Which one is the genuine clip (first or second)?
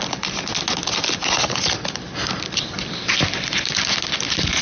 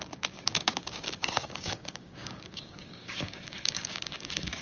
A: first